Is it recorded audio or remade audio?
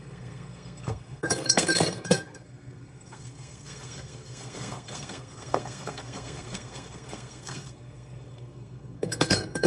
remade